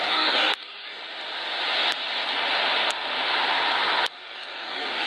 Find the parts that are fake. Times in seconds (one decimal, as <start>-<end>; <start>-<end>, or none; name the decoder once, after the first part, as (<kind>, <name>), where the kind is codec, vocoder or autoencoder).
0.0-1.0 (codec, DAC); 4.1-5.1